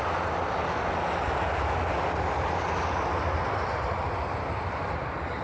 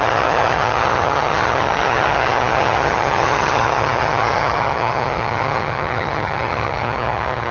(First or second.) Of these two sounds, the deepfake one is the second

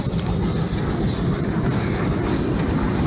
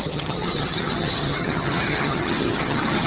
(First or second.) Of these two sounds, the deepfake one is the second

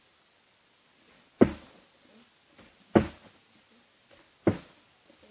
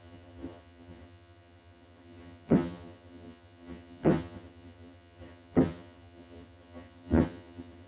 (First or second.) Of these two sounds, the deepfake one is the second